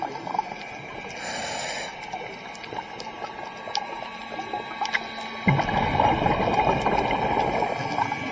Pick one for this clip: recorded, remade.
recorded